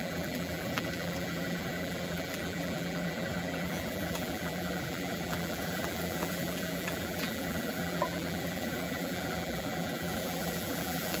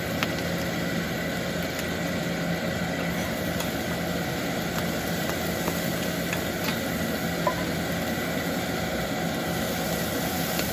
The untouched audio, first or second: second